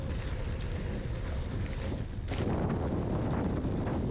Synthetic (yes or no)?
no